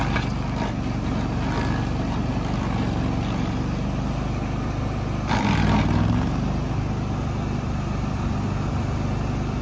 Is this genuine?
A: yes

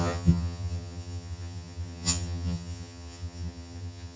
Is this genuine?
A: no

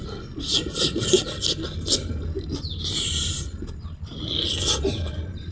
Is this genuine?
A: yes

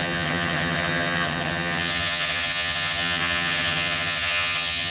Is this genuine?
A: no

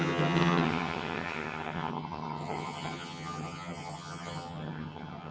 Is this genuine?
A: no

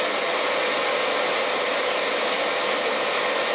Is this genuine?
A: yes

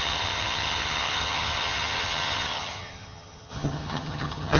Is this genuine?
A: no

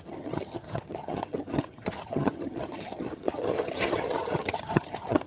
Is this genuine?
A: no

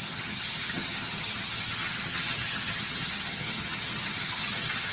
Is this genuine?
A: no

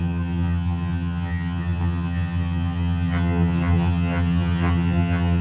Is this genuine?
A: no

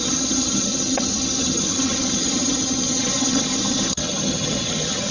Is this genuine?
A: no